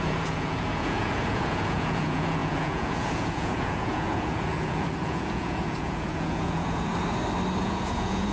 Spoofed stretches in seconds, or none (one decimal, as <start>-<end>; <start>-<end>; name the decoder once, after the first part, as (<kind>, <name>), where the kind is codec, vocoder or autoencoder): 0.0-6.9 (vocoder, Vocos); 7.6-8.3